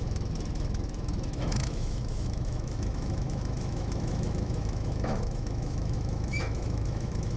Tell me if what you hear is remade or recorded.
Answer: remade